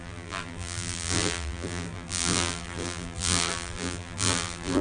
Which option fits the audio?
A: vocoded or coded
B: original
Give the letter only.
A